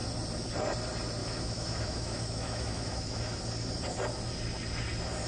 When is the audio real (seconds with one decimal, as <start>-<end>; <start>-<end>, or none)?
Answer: 0.0-1.2; 3.4-5.3